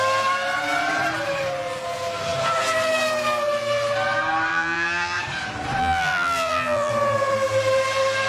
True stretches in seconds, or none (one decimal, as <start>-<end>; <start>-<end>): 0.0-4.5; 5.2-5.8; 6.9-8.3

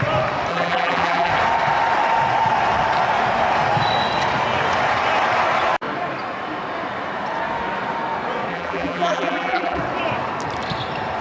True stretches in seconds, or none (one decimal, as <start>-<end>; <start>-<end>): 0.0-0.5; 1.3-8.5; 9.8-11.2

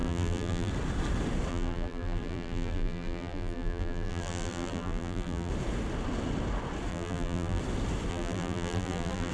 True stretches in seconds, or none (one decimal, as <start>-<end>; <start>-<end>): 0.7-1.5; 5.5-6.9; 7.6-8.1

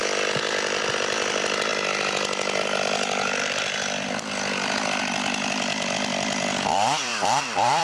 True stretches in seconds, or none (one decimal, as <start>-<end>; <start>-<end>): 0.0-0.8